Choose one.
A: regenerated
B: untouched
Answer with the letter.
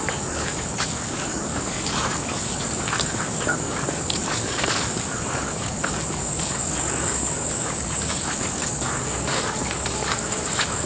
A